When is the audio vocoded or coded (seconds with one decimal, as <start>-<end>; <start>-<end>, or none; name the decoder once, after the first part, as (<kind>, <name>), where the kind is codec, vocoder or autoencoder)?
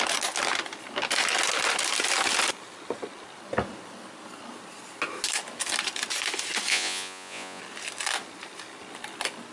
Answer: 6.7-7.6 (vocoder, Vocos)